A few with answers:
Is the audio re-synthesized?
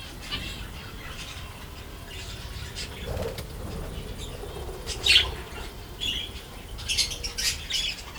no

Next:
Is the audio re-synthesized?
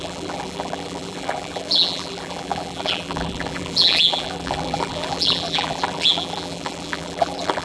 yes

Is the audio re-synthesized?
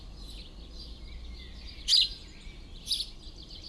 no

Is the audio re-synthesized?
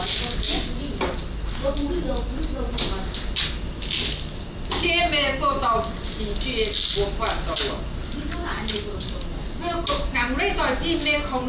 no